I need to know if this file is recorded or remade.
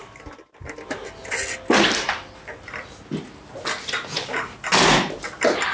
recorded